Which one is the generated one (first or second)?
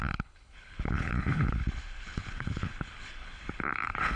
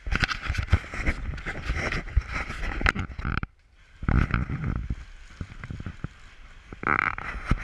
first